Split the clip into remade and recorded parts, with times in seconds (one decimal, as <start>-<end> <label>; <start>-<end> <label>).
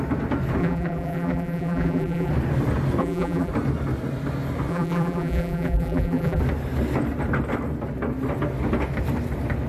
0.0-0.6 recorded; 0.6-2.3 remade; 2.3-3.0 recorded; 3.0-3.5 remade; 3.5-4.7 recorded; 4.7-6.4 remade; 6.4-9.7 recorded